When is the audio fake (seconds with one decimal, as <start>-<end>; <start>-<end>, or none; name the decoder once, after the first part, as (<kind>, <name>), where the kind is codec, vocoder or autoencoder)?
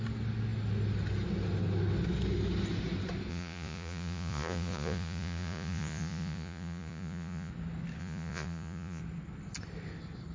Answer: 3.3-7.5 (vocoder, Vocos); 8.0-9.0